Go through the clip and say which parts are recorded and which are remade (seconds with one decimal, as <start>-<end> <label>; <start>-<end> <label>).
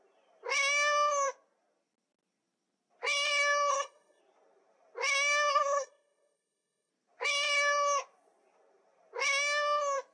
0.0-3.7 recorded; 3.7-4.2 remade; 4.2-5.5 recorded; 5.5-6.9 remade; 6.9-10.1 recorded